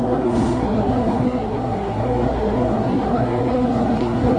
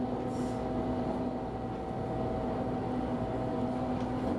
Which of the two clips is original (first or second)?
second